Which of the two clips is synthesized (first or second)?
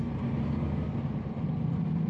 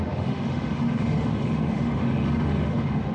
second